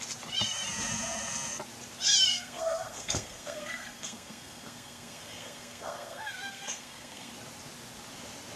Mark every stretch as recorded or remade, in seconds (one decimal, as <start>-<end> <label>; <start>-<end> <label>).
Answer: 0.0-2.3 recorded; 2.3-7.3 remade; 7.3-8.6 recorded